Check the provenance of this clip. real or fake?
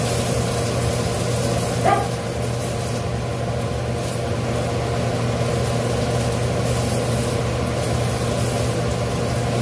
real